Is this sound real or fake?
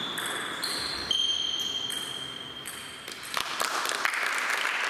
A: fake